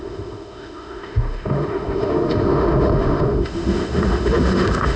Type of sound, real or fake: fake